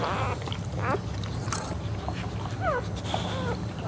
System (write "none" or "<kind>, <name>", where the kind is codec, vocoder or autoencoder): none